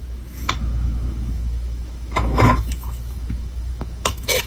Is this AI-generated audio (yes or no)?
yes